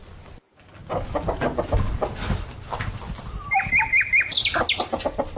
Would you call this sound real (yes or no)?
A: yes